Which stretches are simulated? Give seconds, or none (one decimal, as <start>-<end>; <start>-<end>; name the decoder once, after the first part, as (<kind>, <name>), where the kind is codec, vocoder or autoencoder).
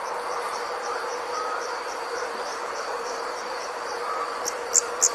2.5-3.4 (vocoder, BigVGAN v2)